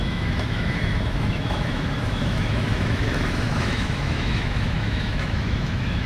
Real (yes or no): no